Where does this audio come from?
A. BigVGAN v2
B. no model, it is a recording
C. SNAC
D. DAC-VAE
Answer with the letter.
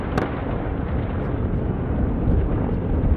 B